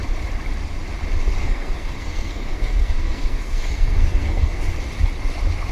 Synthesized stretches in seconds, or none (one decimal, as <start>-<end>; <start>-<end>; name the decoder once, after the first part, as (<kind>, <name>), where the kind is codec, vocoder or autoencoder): 1.4-4.8 (codec, SNAC)